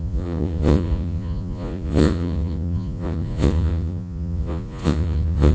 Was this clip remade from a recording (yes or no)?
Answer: yes